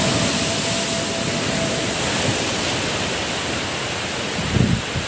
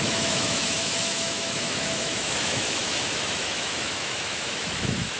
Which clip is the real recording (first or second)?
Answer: first